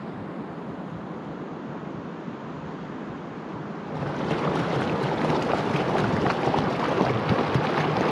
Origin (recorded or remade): recorded